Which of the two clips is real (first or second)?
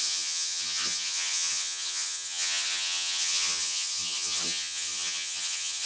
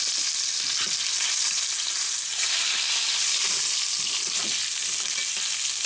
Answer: second